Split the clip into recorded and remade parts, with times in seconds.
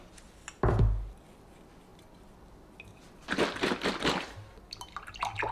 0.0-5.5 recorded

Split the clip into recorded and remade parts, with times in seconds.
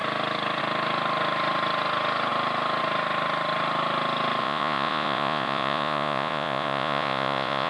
0.0-4.4 recorded; 4.4-7.7 remade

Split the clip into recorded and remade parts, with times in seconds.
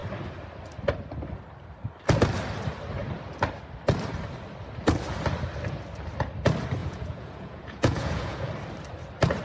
0.0-6.8 recorded; 6.8-8.5 remade; 8.5-9.4 recorded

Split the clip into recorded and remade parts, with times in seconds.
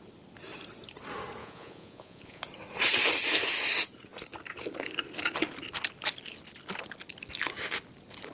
0.0-1.4 recorded; 1.4-2.4 remade; 2.4-8.3 recorded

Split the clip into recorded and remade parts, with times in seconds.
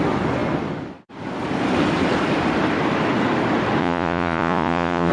0.0-3.8 recorded; 3.8-5.1 remade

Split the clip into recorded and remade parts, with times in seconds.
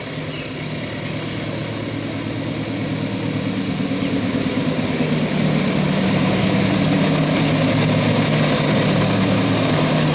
0.0-10.1 recorded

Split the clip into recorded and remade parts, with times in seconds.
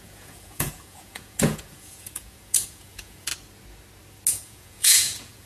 0.0-3.3 remade; 3.3-4.3 recorded; 4.3-5.5 remade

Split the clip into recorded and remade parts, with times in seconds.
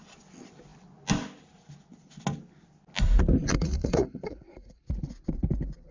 0.0-3.5 recorded; 3.5-4.8 remade; 4.8-5.9 recorded